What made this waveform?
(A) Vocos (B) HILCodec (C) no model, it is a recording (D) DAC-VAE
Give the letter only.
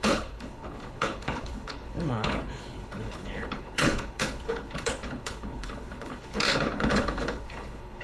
B